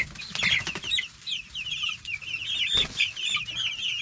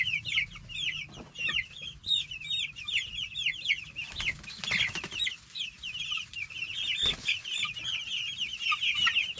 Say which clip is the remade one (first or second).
second